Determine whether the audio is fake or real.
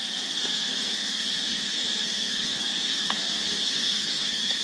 fake